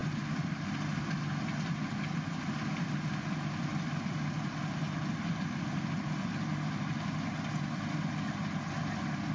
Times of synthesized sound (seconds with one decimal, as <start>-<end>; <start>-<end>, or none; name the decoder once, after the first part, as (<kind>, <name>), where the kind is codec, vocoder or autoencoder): none